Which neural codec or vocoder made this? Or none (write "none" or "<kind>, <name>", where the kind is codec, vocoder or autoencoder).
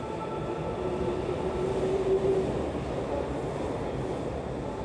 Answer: none